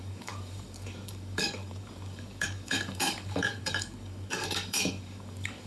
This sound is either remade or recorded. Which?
remade